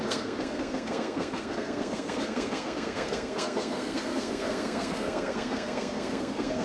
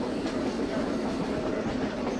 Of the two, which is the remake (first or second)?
first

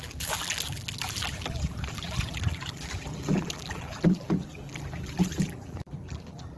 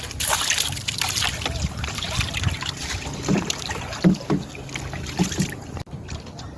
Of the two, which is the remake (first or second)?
first